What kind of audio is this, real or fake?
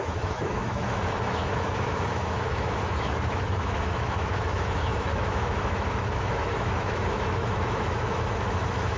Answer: fake